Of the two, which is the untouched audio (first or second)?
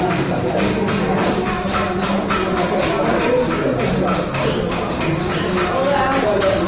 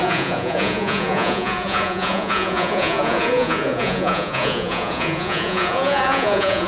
first